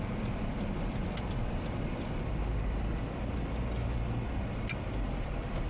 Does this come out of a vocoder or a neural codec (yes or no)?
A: no